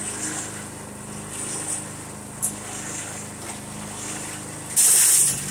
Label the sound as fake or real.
real